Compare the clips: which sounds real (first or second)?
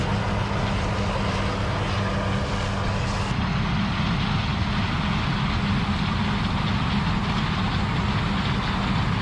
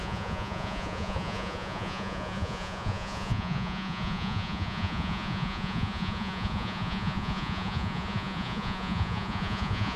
first